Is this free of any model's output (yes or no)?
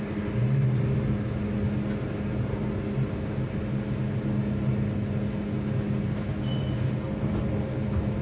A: yes